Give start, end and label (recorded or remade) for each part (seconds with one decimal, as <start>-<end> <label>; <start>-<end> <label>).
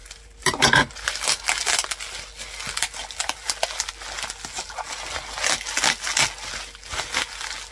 0.0-0.9 remade; 0.9-7.7 recorded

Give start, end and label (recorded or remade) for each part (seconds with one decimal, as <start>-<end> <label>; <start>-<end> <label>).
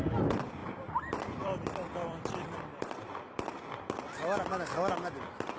0.0-0.6 recorded; 0.6-3.9 remade; 3.9-5.6 recorded